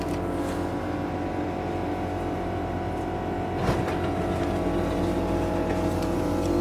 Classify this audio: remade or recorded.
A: recorded